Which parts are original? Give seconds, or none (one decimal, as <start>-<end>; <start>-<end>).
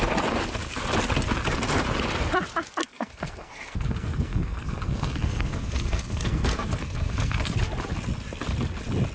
0.0-2.8; 7.7-9.1